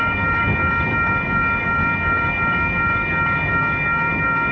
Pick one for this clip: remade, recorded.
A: remade